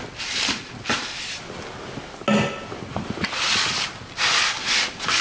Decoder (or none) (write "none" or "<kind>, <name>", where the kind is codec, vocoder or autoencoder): none